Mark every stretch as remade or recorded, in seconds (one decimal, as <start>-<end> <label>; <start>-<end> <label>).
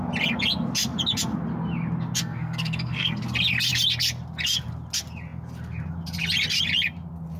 0.0-2.2 recorded; 2.2-3.2 remade; 3.2-7.4 recorded